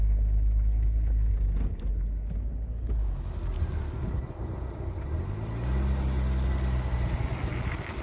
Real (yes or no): yes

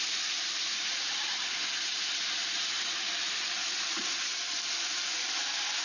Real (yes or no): yes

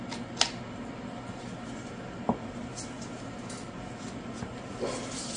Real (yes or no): yes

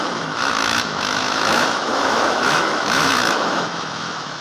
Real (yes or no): no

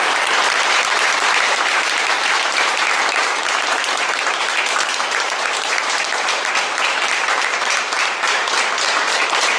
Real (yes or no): no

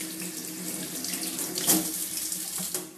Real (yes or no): yes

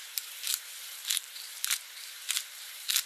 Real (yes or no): no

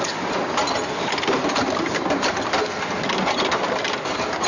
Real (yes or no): yes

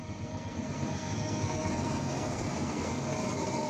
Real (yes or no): no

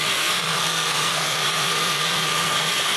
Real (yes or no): no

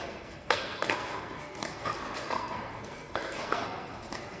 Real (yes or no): no